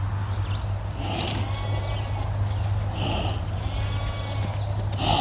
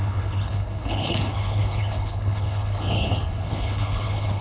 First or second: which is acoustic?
first